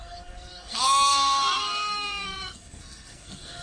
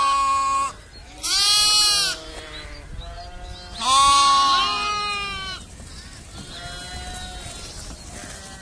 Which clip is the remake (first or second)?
first